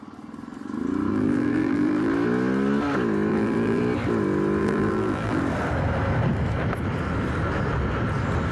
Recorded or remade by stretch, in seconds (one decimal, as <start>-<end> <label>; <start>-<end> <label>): 0.0-1.1 recorded; 1.1-2.1 remade; 2.1-3.3 recorded; 3.3-3.8 remade; 3.8-4.6 recorded; 4.6-5.4 remade; 5.4-8.5 recorded